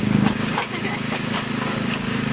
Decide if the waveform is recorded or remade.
remade